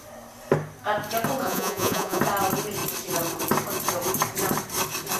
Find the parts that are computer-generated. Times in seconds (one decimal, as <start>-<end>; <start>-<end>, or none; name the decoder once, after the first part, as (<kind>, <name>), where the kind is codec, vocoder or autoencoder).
1.4-2.2 (vocoder, Vocos)